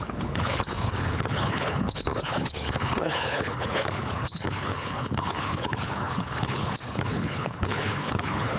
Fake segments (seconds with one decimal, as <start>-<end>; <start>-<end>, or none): 0.0-8.6